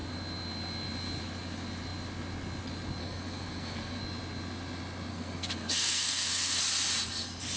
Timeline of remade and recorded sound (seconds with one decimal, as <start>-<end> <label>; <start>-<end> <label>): 0.0-3.0 recorded; 3.0-4.0 remade; 4.0-5.1 recorded; 5.1-6.6 remade; 6.6-7.6 recorded